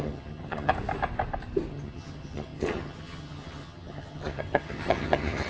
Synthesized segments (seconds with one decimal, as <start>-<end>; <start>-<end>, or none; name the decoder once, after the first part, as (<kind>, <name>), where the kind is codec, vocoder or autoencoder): 0.0-0.7 (vocoder, HiFi-GAN); 1.7-5.5